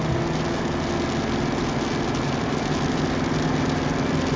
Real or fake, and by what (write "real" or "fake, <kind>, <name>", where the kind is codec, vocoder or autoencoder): real